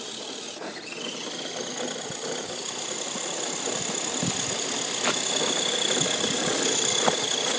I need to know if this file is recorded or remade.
recorded